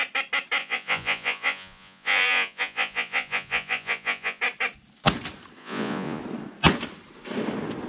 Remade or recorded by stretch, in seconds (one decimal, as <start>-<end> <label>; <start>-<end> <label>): 0.0-0.6 recorded; 0.6-4.4 remade; 4.4-5.6 recorded; 5.6-6.2 remade; 6.2-7.9 recorded